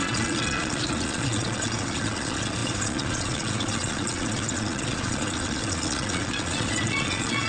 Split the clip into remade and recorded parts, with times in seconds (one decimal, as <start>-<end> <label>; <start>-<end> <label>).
0.0-7.5 remade